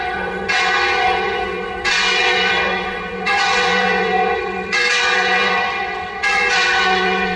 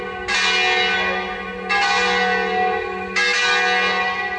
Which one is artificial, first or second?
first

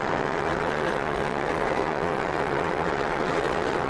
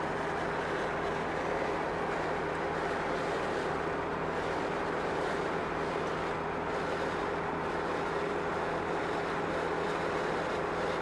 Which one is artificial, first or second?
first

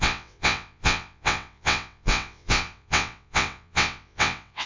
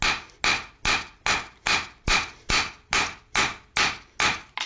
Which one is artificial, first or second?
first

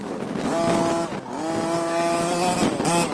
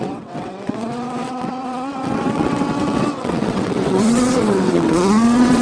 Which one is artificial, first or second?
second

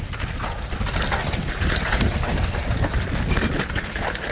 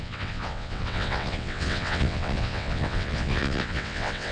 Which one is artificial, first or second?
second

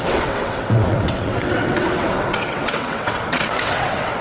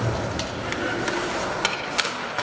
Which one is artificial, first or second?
first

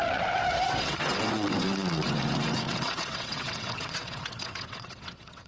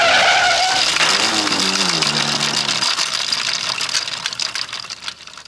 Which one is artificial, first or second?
first